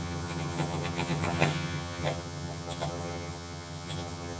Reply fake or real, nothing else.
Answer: fake